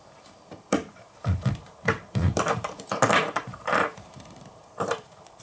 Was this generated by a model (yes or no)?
yes